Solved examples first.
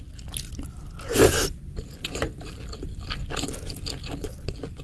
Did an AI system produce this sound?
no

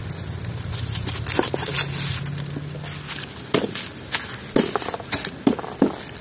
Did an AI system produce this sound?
no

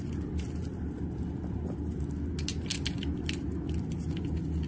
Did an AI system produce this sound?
no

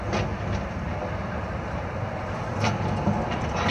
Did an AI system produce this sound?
yes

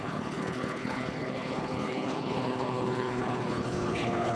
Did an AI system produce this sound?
yes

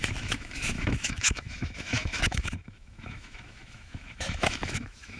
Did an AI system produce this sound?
yes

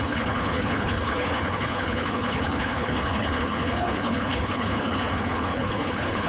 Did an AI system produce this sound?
yes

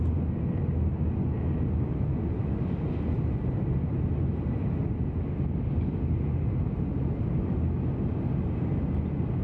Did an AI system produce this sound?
no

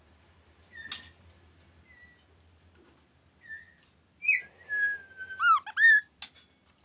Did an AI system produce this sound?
no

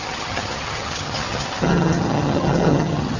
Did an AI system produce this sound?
yes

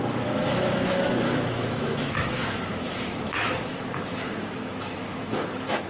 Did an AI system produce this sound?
yes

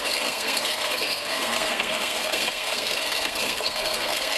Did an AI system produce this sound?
yes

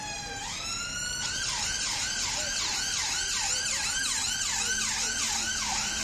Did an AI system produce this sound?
no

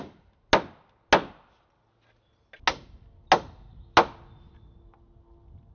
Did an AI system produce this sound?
no